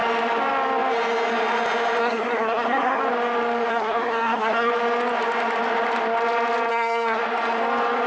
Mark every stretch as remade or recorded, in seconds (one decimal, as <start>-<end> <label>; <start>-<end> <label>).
0.0-2.0 recorded; 2.0-3.0 remade; 3.0-3.7 recorded; 3.7-4.7 remade; 4.7-6.7 recorded; 6.7-7.2 remade; 7.2-8.1 recorded